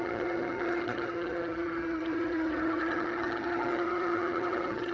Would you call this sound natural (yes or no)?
no